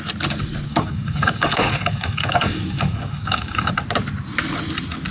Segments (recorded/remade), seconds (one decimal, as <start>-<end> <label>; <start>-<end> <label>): 0.0-0.7 recorded; 0.7-3.7 remade; 3.7-5.1 recorded